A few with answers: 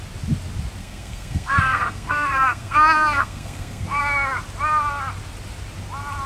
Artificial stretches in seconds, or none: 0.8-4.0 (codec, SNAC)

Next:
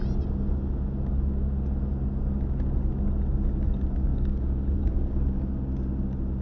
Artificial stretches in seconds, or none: 4.1-5.4 (codec, DAC)

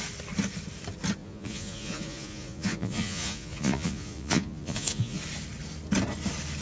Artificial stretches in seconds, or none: 1.2-5.2 (vocoder, Vocos)

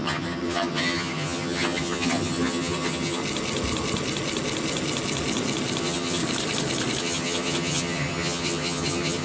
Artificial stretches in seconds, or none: 0.0-3.2 (vocoder, HiFi-GAN); 5.8-6.2; 7.0-9.2

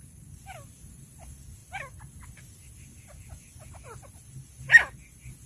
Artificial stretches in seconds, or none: 4.2-5.5 (vocoder, BigVGAN v2)